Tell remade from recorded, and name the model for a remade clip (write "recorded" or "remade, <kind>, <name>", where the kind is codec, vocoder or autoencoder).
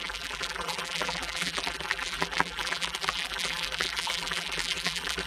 remade, vocoder, BigVGAN v2